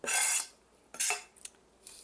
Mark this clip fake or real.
real